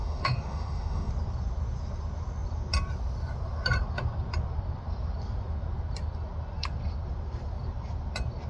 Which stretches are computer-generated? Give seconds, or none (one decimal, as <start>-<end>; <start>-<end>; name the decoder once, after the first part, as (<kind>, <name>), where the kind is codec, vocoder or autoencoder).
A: 0.0-1.1 (autoencoder, DAC-VAE)